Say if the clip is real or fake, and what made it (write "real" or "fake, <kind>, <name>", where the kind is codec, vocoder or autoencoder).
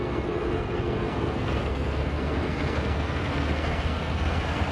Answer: fake, codec, SNAC